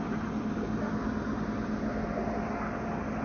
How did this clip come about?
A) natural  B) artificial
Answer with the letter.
A